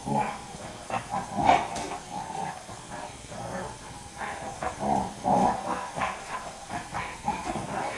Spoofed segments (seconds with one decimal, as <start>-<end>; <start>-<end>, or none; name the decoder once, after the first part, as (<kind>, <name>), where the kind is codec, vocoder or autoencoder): 0.0-4.8 (codec, SNAC); 5.2-8.0